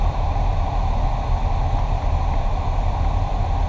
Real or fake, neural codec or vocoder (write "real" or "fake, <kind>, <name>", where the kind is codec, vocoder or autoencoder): real